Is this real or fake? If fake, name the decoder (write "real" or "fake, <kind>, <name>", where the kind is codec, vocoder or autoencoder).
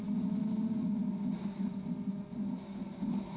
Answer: real